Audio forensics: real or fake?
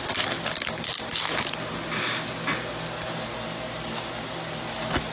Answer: real